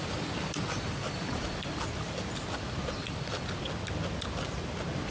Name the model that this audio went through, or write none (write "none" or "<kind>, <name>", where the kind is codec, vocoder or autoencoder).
none